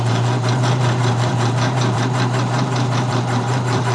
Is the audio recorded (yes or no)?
no